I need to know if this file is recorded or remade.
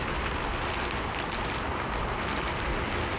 recorded